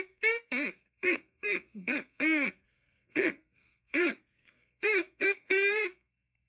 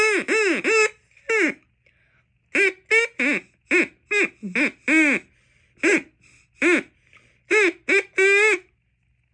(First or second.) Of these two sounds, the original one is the second